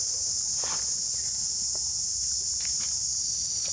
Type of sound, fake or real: real